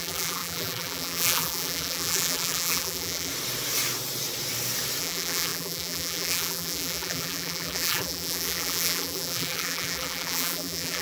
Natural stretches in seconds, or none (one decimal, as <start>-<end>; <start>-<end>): 3.3-5.0